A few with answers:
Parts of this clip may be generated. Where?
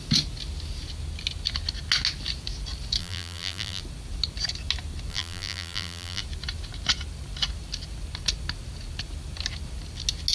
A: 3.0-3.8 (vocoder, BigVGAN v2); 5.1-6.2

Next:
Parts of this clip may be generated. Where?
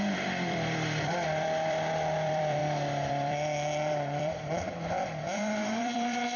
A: 0.0-2.6 (vocoder, BigVGAN v2); 3.1-6.4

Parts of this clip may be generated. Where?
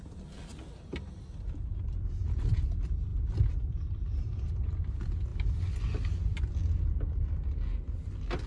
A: 3.1-4.5 (vocoder, BigVGAN v2)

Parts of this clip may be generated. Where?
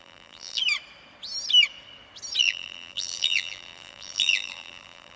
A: 0.0-0.6 (vocoder, BigVGAN v2); 2.4-5.2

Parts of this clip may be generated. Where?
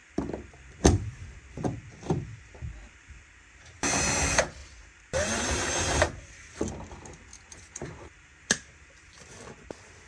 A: 0.0-4.0 (vocoder, BigVGAN v2); 4.6-6.0; 7.3-10.1